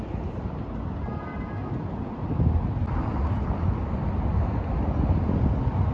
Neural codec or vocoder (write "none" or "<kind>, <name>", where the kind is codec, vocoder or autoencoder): none